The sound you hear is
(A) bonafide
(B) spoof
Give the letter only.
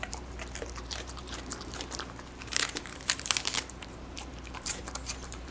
B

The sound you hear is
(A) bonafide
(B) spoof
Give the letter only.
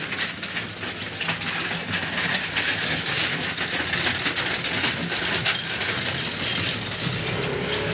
A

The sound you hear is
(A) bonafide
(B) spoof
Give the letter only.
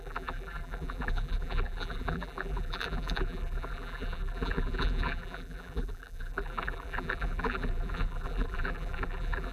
B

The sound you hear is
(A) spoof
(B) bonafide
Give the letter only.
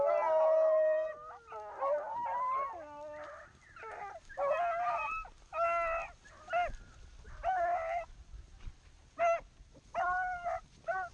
B